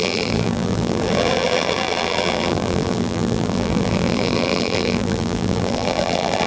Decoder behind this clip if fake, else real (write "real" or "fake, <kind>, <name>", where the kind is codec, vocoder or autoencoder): fake, vocoder, BigVGAN v2